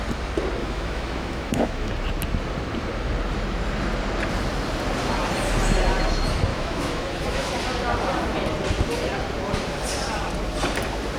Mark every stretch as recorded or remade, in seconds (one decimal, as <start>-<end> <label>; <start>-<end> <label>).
0.0-0.6 recorded; 0.6-1.9 remade; 1.9-6.5 recorded; 6.5-7.5 remade; 7.5-11.2 recorded